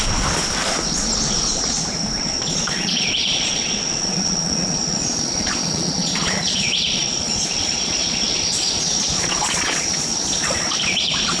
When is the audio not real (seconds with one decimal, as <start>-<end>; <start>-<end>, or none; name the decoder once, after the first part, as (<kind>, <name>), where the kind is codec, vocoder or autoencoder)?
2.2-11.4 (vocoder, Vocos)